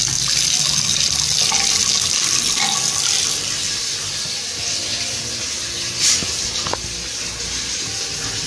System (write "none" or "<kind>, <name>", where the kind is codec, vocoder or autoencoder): none